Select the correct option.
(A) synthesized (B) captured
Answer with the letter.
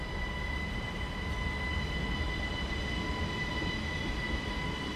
B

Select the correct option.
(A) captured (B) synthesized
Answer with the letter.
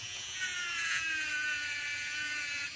B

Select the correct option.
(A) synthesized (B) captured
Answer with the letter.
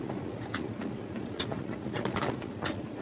A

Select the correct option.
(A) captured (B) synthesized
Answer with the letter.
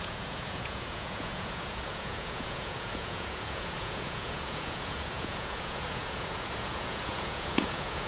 B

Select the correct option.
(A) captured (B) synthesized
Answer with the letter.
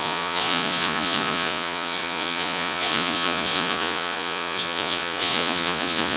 B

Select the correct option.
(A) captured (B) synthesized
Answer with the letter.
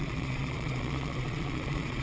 B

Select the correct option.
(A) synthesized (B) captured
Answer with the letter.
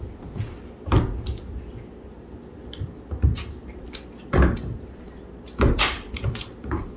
B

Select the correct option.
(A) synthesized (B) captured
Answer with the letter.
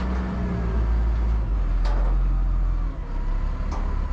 B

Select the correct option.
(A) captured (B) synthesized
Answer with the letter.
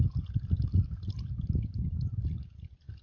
A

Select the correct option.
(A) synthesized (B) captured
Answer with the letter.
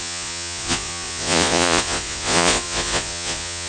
A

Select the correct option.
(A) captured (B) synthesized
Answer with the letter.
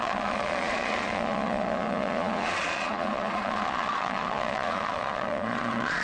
B